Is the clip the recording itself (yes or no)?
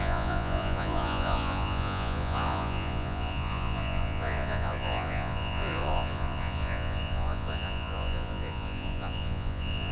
no